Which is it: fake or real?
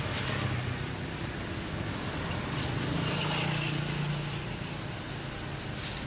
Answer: real